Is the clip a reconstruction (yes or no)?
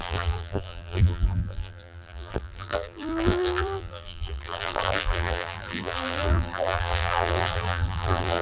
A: yes